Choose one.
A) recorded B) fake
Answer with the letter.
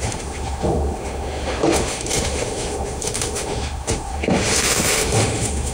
B